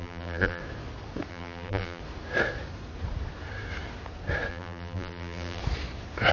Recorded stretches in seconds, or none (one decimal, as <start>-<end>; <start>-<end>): 0.6-1.3; 2.0-4.5; 5.6-6.3